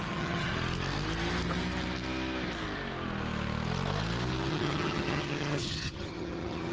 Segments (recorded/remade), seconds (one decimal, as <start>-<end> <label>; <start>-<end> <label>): 0.0-0.5 remade; 0.5-4.5 recorded; 4.5-6.7 remade